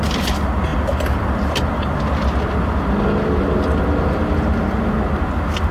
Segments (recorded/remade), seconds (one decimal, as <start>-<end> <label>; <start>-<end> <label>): 0.0-5.7 recorded